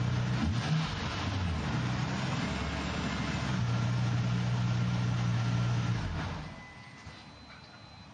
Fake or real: real